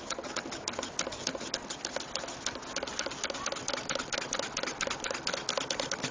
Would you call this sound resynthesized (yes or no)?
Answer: no